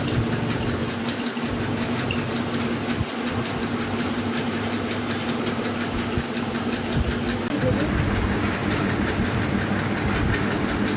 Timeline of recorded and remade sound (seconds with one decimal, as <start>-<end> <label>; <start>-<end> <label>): 0.0-0.8 recorded; 0.8-5.8 remade; 5.8-8.6 recorded; 8.6-9.4 remade; 9.4-11.0 recorded